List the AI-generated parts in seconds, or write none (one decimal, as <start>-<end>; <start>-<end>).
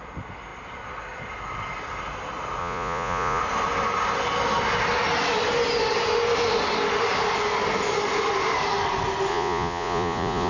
2.6-3.4; 9.3-10.5